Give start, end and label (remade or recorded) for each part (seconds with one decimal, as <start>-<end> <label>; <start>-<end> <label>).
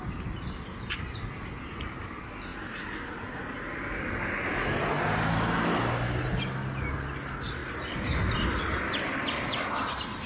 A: 0.0-10.3 recorded